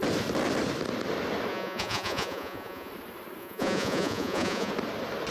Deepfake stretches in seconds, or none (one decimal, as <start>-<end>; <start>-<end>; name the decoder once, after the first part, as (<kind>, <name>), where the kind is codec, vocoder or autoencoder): 1.5-2.9 (vocoder, Vocos); 3.4-4.7